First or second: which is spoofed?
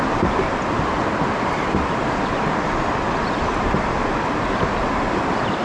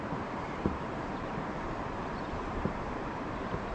second